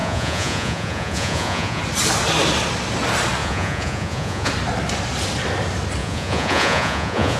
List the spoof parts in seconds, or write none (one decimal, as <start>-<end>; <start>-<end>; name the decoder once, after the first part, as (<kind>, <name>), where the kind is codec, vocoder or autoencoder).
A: 0.0-1.8 (vocoder, Vocos); 3.4-4.5; 6.0-7.4